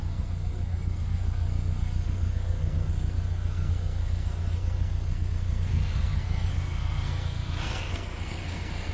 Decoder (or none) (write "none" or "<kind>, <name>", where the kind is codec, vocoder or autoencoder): codec, SNAC